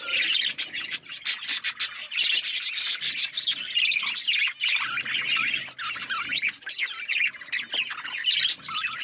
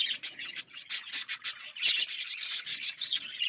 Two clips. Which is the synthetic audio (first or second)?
second